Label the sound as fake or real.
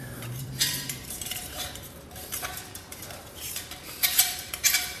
fake